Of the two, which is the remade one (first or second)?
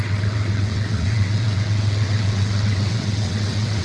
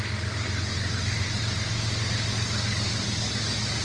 first